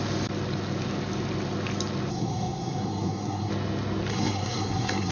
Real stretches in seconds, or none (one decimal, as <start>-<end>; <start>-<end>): 0.0-2.1; 3.5-4.1